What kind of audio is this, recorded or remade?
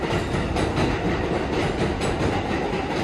recorded